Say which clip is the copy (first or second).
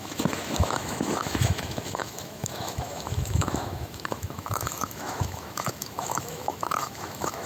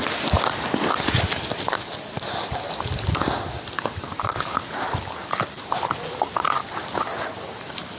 first